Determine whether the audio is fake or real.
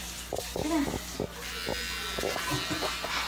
real